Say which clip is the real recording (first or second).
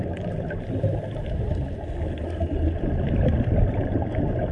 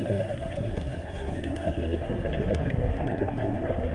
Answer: first